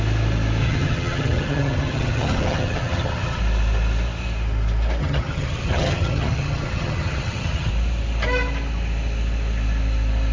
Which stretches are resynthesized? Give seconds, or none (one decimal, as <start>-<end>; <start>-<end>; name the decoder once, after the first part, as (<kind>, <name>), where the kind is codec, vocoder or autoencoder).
0.6-3.4 (vocoder, HiFi-GAN); 5.0-7.7